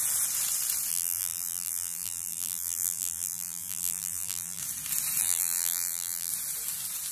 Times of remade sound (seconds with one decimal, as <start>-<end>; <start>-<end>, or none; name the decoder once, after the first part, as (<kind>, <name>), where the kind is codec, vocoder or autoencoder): 0.9-4.6 (vocoder, BigVGAN v2); 5.2-6.3